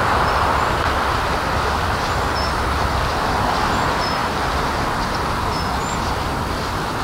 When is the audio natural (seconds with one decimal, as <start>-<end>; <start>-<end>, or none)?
0.0-7.0